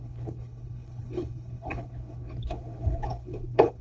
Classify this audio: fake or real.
fake